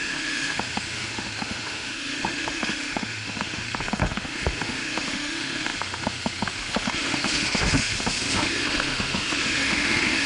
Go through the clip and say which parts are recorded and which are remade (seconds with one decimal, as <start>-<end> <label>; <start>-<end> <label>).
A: 0.0-10.3 remade